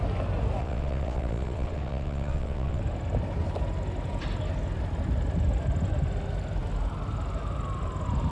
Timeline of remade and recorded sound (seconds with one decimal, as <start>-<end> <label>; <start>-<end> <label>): 0.0-0.6 recorded; 0.6-2.8 remade; 2.8-8.3 recorded